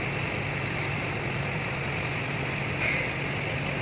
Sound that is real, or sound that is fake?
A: real